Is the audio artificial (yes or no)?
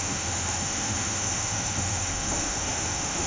yes